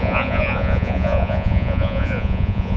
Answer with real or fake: fake